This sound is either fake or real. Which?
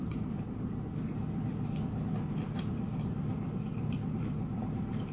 real